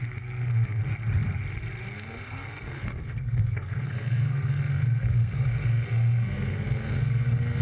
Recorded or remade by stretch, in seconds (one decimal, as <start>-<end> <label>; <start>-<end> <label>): 0.0-0.8 remade; 0.8-1.9 recorded; 1.9-7.6 remade